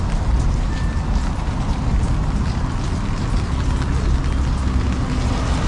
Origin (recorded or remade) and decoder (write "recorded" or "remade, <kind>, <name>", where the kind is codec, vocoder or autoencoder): recorded